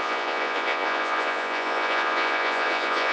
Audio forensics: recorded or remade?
remade